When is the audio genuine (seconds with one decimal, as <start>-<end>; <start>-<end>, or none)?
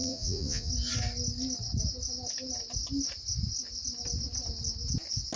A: 0.7-5.4